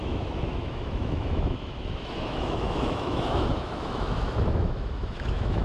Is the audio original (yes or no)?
no